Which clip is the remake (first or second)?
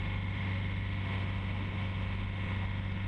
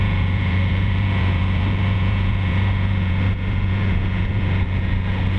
second